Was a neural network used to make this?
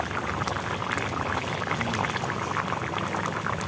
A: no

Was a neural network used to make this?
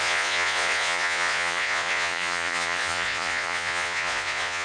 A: yes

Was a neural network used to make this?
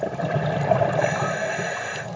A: no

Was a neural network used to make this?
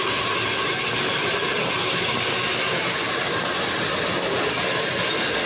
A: no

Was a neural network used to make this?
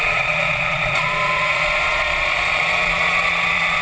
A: yes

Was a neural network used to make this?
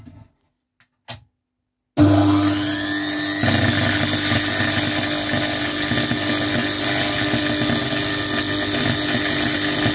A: no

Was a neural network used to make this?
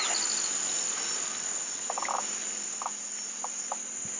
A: no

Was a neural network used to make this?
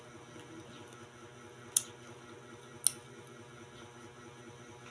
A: no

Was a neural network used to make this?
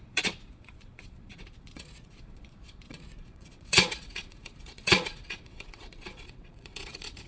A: yes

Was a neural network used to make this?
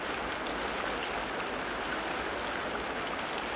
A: no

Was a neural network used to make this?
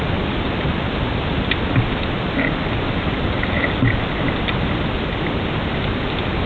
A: no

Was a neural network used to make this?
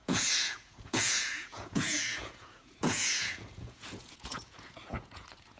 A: yes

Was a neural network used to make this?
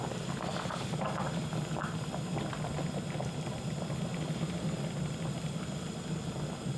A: no